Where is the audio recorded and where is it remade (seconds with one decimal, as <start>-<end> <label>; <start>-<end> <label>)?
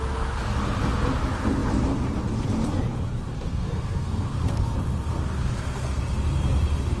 0.0-3.3 recorded; 3.3-4.6 remade; 4.6-7.0 recorded